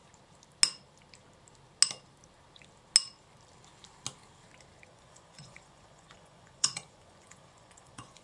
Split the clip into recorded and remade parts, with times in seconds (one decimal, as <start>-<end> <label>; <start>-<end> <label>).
0.0-4.9 recorded; 4.9-8.2 remade